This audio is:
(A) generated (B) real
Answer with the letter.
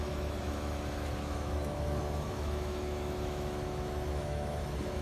A